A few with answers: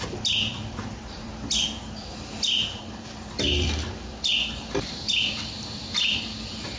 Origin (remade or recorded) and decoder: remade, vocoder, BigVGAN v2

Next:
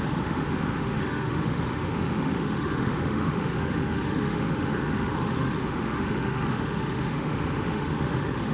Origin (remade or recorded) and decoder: remade, autoencoder, DAC-VAE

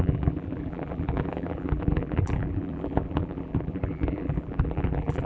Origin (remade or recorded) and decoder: remade, vocoder, BigVGAN v2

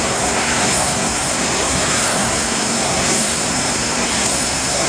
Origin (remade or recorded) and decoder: remade, codec, SNAC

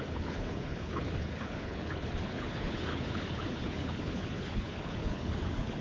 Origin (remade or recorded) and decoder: remade, codec, HILCodec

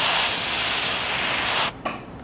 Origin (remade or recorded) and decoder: recorded